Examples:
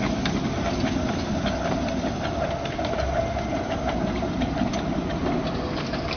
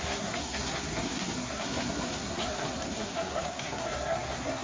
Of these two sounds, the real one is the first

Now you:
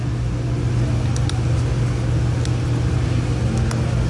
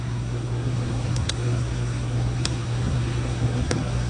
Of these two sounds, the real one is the first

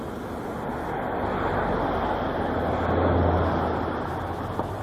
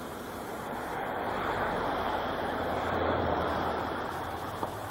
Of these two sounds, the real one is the first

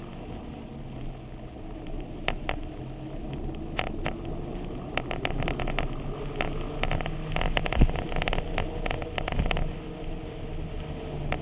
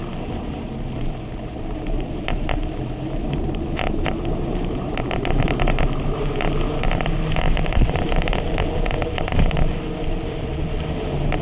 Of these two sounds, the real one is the first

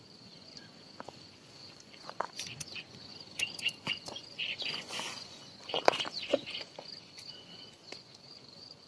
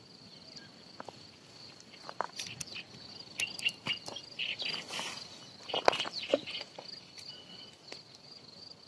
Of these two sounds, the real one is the second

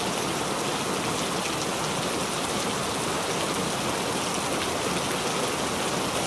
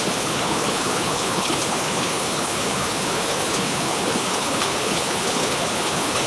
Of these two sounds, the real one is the first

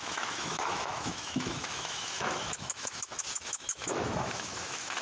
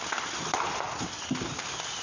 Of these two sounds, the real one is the second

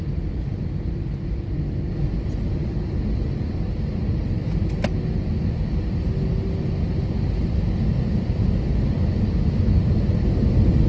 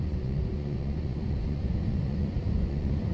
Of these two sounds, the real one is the first